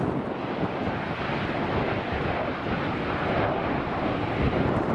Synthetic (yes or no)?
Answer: no